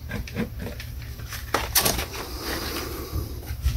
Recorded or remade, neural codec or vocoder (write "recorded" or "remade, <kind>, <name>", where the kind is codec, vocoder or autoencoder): remade, vocoder, BigVGAN v2